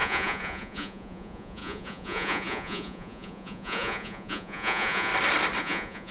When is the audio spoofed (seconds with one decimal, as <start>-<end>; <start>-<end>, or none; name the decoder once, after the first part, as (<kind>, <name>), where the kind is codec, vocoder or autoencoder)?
0.0-5.1 (vocoder, Vocos); 5.6-6.1